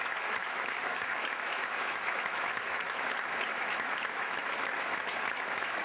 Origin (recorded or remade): remade